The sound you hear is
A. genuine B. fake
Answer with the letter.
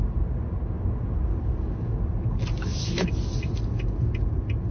A